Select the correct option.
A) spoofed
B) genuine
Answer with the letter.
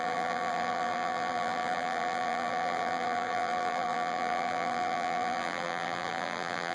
A